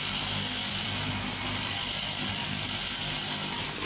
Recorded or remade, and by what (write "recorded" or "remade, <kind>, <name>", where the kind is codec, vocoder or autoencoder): recorded